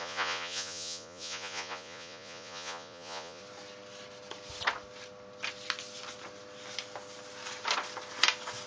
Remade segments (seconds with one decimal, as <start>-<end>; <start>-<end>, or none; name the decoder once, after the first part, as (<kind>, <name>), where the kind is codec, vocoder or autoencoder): 0.0-3.4 (vocoder, Vocos)